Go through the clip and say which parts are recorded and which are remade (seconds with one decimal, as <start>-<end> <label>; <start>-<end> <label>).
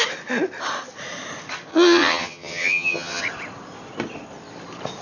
0.0-1.7 recorded; 1.7-3.2 remade; 3.2-5.0 recorded